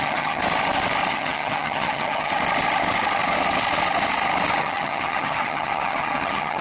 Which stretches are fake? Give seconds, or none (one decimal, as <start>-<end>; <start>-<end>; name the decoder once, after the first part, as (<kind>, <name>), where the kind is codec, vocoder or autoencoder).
0.0-0.4 (vocoder, HiFi-GAN); 1.1-2.3; 4.6-6.6